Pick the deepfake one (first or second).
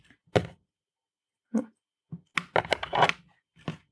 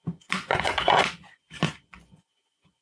second